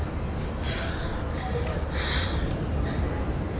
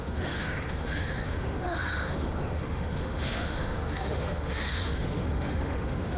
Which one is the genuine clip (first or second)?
first